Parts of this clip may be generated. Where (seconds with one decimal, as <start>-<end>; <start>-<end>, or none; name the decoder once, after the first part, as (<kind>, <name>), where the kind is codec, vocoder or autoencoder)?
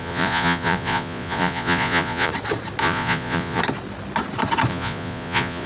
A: 0.0-2.3 (vocoder, Vocos); 2.8-3.6; 4.7-5.7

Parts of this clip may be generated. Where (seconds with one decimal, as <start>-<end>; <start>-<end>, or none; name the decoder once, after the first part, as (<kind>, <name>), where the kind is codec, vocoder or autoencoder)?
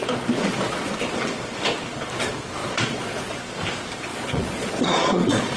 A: 0.0-0.9 (vocoder, Vocos); 2.6-3.4; 4.1-5.6